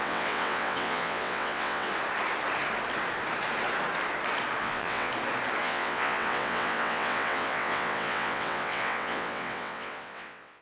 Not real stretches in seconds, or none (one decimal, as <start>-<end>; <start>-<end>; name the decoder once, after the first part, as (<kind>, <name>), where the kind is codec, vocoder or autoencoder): 0.0-1.9 (vocoder, WaveNeXt); 4.6-5.1; 5.6-10.6